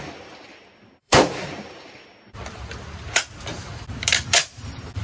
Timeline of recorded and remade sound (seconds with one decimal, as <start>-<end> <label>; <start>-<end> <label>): 0.0-1.0 recorded; 1.0-1.9 remade; 1.9-3.5 recorded; 3.5-5.0 remade